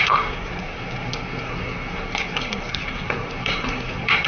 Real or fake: fake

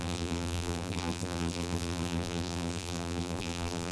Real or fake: fake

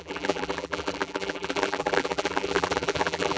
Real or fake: fake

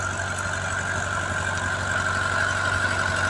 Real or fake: real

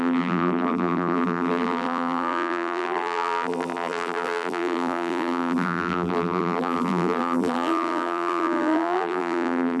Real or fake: fake